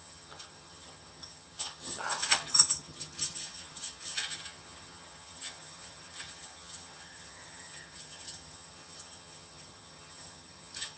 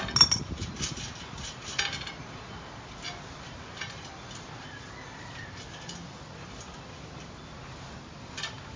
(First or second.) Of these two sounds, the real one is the second